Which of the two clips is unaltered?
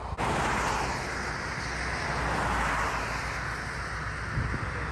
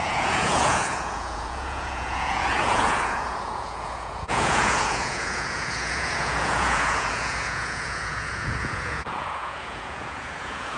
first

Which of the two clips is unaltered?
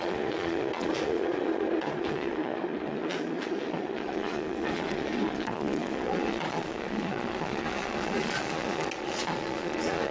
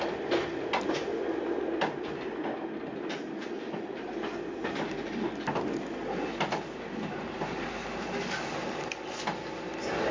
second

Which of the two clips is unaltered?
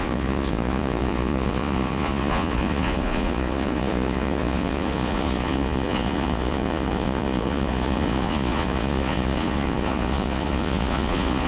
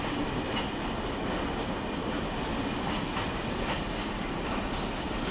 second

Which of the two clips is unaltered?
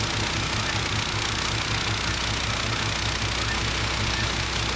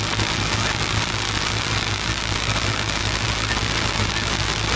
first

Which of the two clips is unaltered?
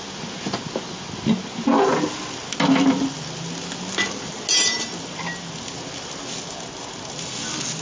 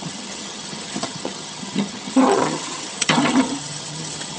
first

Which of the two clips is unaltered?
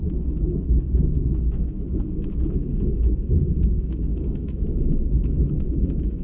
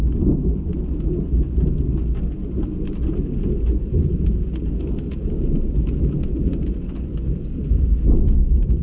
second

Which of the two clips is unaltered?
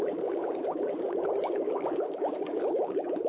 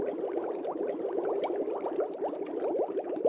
second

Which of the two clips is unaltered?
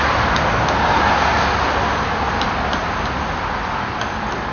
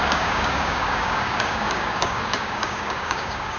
first